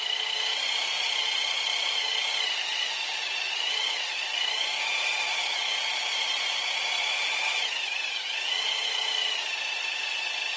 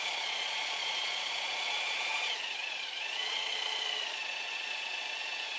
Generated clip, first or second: second